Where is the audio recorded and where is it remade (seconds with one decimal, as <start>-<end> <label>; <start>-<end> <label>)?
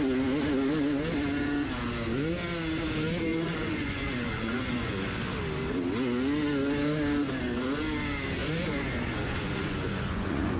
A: 0.0-3.3 recorded; 3.3-5.1 remade; 5.1-8.4 recorded; 8.4-10.6 remade